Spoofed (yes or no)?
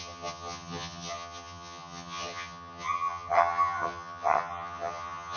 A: yes